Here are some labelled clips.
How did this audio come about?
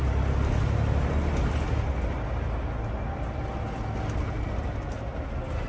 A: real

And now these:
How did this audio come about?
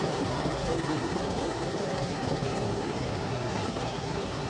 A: fake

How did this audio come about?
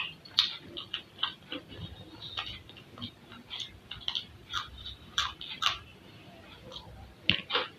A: real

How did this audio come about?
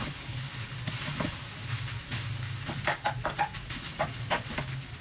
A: real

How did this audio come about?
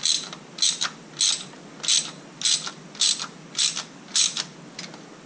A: real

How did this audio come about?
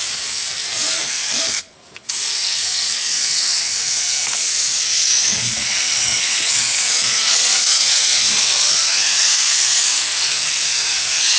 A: fake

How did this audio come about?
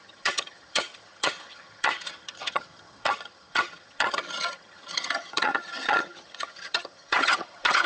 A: fake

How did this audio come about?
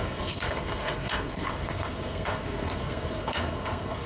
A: fake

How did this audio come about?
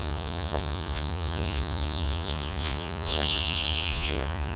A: fake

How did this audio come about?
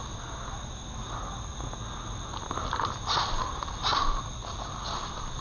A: real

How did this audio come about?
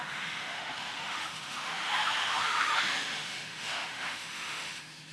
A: fake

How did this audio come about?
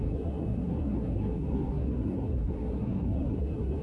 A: fake